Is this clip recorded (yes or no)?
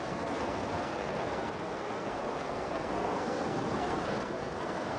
no